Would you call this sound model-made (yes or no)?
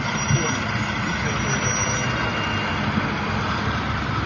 no